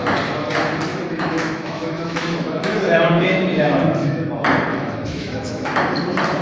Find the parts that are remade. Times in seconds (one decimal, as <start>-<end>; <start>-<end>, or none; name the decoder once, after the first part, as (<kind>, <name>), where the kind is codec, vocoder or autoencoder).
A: 0.9-4.3 (autoencoder, DAC-VAE); 4.7-5.8